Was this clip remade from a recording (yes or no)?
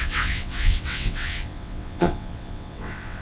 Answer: yes